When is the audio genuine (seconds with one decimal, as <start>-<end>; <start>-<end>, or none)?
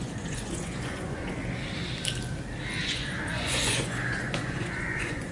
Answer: 1.4-2.8